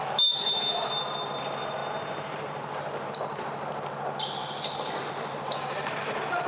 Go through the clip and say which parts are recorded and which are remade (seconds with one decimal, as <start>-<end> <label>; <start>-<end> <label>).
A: 0.0-1.0 remade; 1.0-6.5 recorded